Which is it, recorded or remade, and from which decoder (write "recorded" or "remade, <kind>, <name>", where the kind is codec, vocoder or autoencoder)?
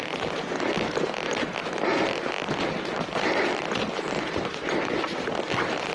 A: recorded